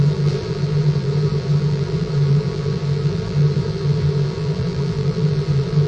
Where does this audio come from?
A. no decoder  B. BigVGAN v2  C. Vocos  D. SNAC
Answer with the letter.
B